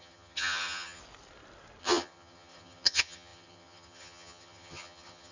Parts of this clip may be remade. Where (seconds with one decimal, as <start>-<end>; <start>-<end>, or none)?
0.0-1.0; 1.8-5.3